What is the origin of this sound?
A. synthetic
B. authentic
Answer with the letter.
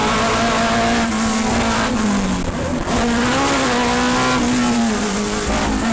B